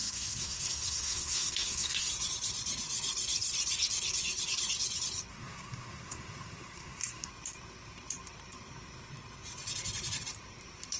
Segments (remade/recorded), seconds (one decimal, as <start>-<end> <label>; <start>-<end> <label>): 0.0-2.1 remade; 2.1-5.3 recorded; 5.3-7.3 remade; 7.3-11.0 recorded